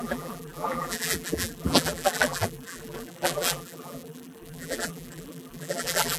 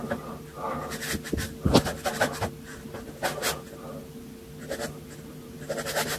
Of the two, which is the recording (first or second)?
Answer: second